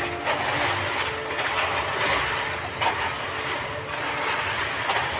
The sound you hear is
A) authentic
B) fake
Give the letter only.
A